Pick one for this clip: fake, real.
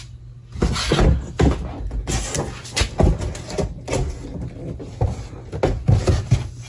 real